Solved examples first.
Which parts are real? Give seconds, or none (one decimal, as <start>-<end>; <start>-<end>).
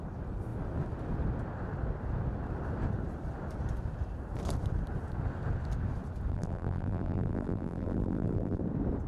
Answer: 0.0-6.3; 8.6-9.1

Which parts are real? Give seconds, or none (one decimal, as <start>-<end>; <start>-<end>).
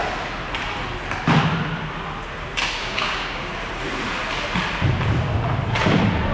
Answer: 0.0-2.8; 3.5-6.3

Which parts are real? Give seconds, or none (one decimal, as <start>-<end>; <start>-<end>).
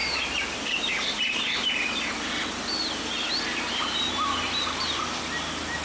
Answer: 1.7-3.5; 5.0-5.8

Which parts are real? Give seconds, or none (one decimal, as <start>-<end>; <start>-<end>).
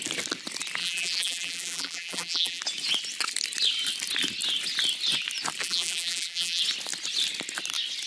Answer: 0.0-0.8; 2.6-5.6; 6.6-8.1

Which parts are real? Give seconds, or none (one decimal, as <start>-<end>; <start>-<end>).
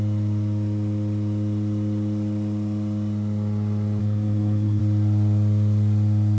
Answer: 0.0-4.0; 4.8-6.4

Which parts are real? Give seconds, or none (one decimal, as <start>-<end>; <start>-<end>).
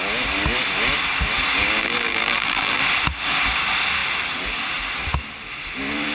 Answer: 0.0-1.8; 2.8-6.1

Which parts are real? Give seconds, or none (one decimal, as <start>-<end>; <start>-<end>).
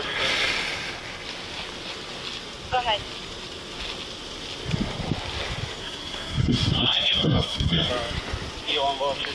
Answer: 0.0-5.8; 7.9-9.3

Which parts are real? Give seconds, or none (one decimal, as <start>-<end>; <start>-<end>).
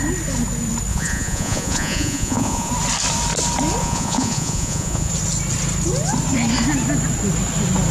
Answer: 0.0-0.9; 2.7-3.8; 5.1-7.9